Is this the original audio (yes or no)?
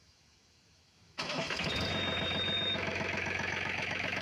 no